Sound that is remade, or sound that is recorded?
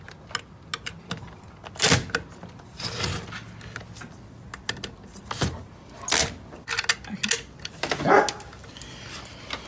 recorded